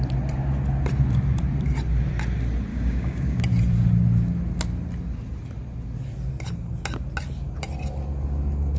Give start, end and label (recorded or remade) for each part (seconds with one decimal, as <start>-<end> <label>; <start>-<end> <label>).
0.0-2.7 recorded; 2.7-3.4 remade; 3.4-8.8 recorded